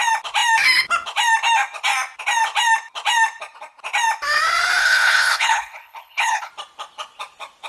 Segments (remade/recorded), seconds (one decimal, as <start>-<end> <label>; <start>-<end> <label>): 0.0-4.8 recorded; 4.8-6.5 remade; 6.5-7.7 recorded